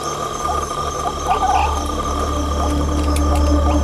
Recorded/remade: recorded